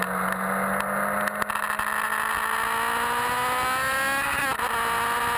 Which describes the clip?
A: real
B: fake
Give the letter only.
A